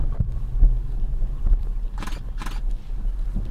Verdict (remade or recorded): recorded